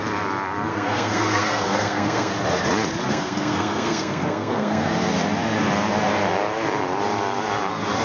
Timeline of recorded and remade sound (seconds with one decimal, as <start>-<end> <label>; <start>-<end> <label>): 0.0-0.7 recorded; 0.7-2.3 remade; 2.3-3.1 recorded; 3.1-4.9 remade; 4.9-8.0 recorded